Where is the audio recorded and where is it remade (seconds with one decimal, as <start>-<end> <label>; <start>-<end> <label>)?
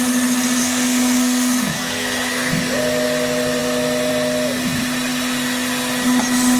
0.0-0.6 recorded; 0.6-2.5 remade; 2.5-6.6 recorded